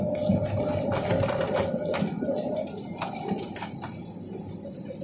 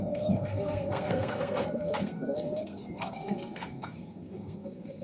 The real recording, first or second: first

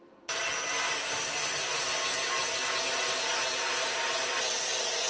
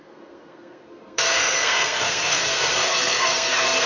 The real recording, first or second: first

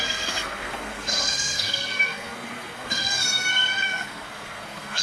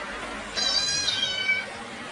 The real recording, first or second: second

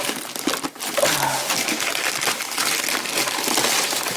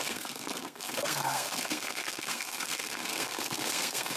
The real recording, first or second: first